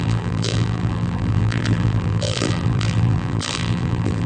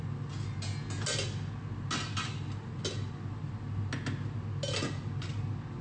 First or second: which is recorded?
second